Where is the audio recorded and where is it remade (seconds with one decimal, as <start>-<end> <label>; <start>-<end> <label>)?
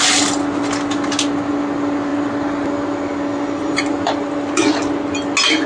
0.0-5.7 recorded